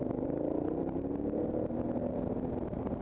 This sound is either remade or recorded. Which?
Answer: remade